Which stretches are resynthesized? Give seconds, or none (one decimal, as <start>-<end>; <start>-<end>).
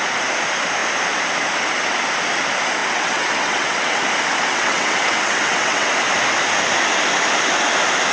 2.8-4.0; 4.5-5.9